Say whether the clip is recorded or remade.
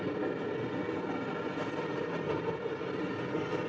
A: recorded